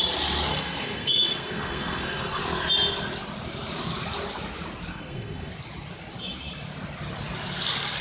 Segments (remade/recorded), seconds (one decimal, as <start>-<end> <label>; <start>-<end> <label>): 0.0-0.5 recorded; 0.5-2.4 remade; 2.4-4.9 recorded; 4.9-5.5 remade; 5.5-8.0 recorded